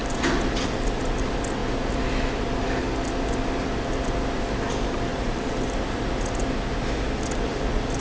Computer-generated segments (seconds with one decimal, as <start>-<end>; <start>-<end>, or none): 5.1-5.7